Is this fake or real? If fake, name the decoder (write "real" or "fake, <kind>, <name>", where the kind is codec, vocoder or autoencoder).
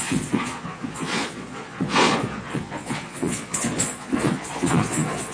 fake, vocoder, Vocos